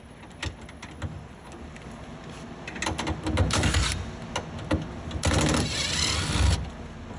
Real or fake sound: real